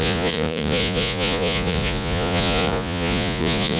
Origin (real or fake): fake